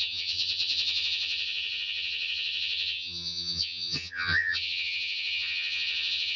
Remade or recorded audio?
remade